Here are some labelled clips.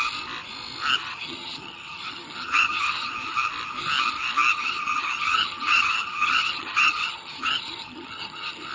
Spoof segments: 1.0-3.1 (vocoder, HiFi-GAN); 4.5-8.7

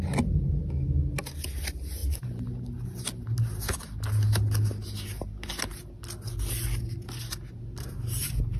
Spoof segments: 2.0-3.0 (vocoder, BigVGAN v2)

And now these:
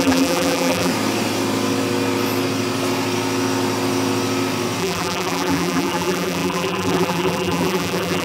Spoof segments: 0.0-0.9 (vocoder, BigVGAN v2); 4.8-8.2